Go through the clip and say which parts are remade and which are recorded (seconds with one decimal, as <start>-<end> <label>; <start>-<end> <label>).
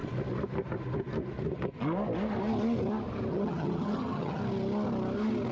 0.0-3.3 recorded; 3.3-4.4 remade; 4.4-5.5 recorded